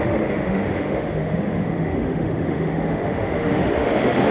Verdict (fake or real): fake